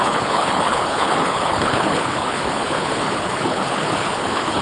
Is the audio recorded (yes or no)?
no